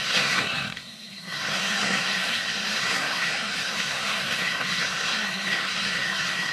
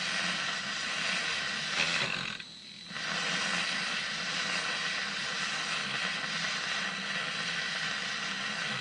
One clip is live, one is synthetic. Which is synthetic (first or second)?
first